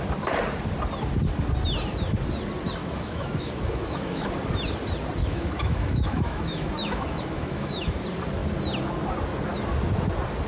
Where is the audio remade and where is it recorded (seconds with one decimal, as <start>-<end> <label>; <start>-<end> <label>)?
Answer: 0.0-2.8 recorded; 2.8-4.3 remade; 4.3-5.2 recorded; 5.2-8.0 remade; 8.0-10.5 recorded